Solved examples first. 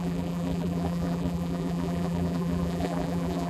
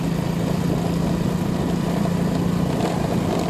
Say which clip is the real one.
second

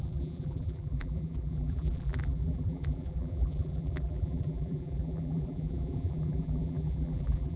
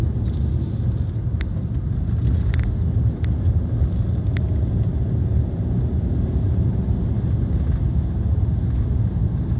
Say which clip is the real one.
second